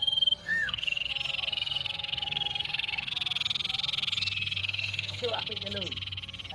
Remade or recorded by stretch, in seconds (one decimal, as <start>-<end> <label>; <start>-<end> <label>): 0.0-0.4 recorded; 0.4-1.1 remade; 1.1-1.5 recorded; 1.5-3.1 remade; 3.1-4.6 recorded; 4.6-5.4 remade; 5.4-6.5 recorded